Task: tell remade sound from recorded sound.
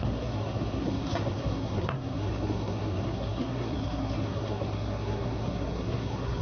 remade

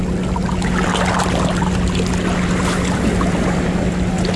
recorded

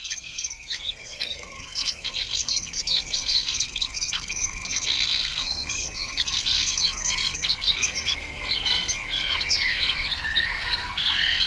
remade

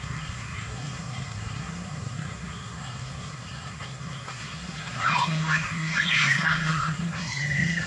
remade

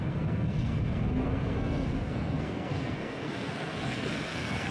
remade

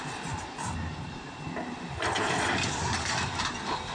recorded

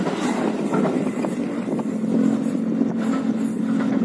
recorded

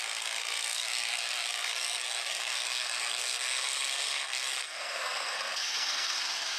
remade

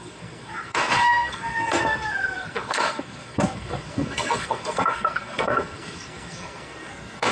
remade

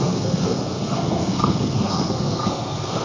remade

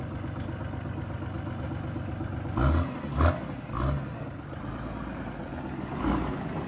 recorded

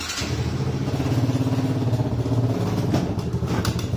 recorded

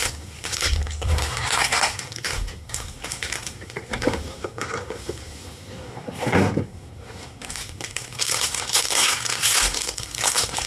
remade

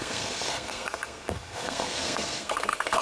remade